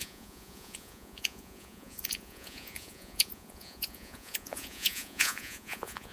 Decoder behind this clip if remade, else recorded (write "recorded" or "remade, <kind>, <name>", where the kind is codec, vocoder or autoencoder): remade, vocoder, Vocos